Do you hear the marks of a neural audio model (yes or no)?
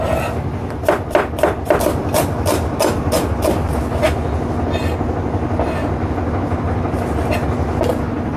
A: no